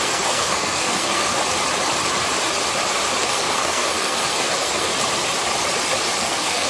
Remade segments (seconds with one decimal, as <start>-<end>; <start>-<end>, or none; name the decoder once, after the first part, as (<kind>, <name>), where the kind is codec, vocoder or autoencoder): 0.0-1.3 (codec, SNAC); 3.2-4.9; 6.2-6.7